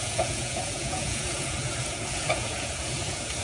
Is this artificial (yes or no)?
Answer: yes